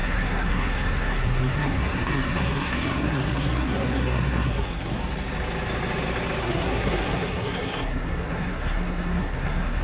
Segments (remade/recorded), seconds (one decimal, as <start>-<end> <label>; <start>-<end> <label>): 0.0-5.0 remade; 5.0-6.4 recorded; 6.4-9.8 remade